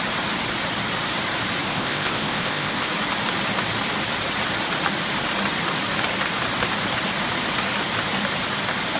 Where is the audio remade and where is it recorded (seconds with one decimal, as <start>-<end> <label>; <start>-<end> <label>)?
0.0-1.7 recorded; 1.7-2.9 remade; 2.9-9.0 recorded